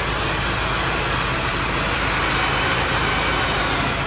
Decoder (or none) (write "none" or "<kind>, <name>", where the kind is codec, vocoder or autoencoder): none